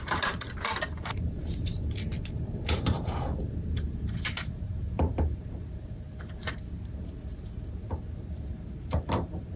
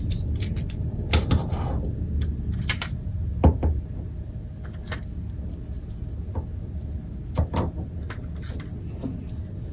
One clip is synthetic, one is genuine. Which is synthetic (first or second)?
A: first